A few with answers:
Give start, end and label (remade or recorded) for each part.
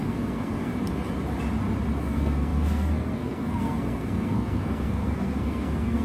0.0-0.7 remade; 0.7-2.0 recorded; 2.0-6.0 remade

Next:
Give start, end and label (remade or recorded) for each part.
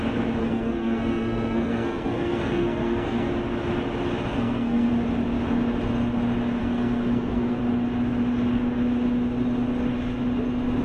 0.0-0.4 recorded; 0.4-3.3 remade; 3.3-4.3 recorded; 4.3-4.9 remade; 4.9-6.6 recorded; 6.6-7.6 remade; 7.6-10.8 recorded